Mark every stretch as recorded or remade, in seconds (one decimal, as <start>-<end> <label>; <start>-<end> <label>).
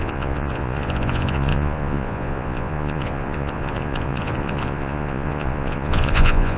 0.0-6.6 remade